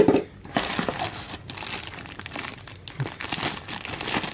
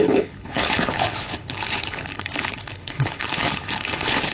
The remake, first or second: second